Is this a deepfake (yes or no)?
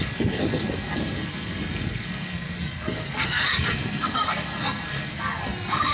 yes